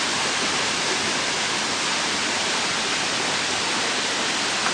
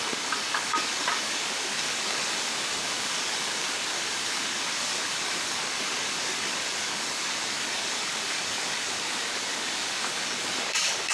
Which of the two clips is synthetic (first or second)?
second